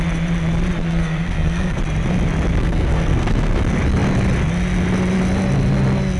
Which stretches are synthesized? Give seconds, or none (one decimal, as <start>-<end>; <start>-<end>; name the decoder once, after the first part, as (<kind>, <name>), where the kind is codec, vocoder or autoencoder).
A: 0.8-1.8 (codec, SNAC); 2.6-3.6